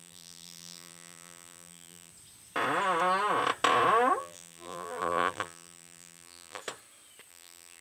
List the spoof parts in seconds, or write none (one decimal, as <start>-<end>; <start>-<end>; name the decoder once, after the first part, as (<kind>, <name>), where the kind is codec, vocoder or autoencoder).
0.0-2.1 (vocoder, BigVGAN v2); 4.2-6.6; 7.3-7.8